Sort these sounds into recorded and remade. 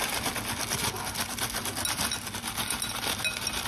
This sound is recorded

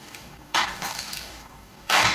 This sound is remade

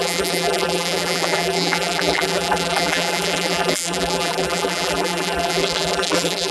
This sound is remade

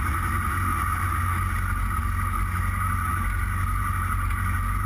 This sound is recorded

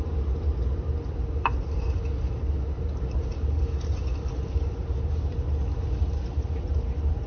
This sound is recorded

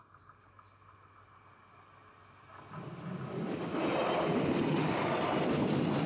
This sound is recorded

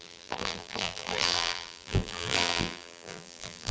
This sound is remade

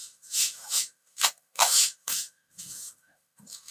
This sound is remade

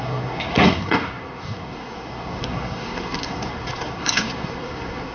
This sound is remade